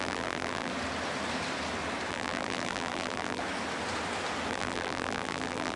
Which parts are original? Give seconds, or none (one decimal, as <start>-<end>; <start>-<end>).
0.7-2.1; 3.4-4.5